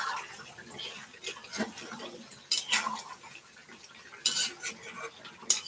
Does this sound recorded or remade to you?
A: recorded